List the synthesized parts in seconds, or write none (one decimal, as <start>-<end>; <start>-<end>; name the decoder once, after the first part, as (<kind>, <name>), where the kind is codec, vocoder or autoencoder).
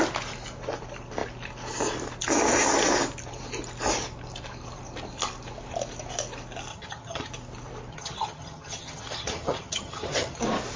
6.7-7.3 (vocoder, HiFi-GAN); 7.9-10.4